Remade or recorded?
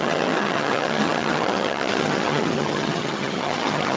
remade